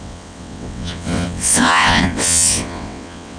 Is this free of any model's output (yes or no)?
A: no